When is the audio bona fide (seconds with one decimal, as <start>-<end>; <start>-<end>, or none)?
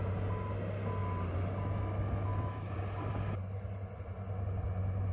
0.0-2.3; 3.1-5.1